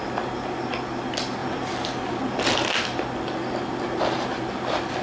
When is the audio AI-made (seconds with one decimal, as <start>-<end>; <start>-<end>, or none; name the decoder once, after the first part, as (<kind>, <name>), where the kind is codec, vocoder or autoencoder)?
1.4-2.7 (vocoder, BigVGAN v2)